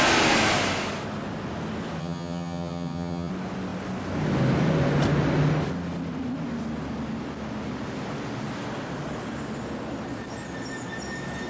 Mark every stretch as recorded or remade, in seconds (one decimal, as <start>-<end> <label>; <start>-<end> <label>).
0.0-2.0 recorded; 2.0-3.3 remade; 3.3-11.5 recorded